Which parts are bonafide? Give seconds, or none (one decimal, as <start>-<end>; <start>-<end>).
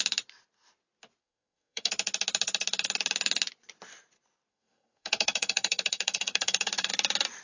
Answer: 0.0-1.2; 1.9-4.5; 6.9-7.4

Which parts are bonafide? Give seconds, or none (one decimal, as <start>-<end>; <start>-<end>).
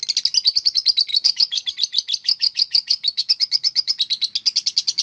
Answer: 0.0-1.1; 1.7-2.2; 3.9-5.0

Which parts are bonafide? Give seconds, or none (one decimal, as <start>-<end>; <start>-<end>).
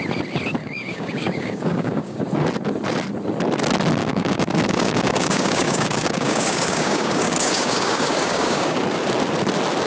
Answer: 0.0-0.6; 2.2-4.0; 8.8-9.9